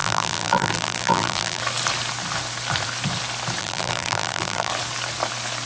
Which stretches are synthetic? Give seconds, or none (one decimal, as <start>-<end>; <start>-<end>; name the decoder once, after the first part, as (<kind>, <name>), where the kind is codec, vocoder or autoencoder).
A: 0.0-1.6 (vocoder, BigVGAN v2); 3.6-4.7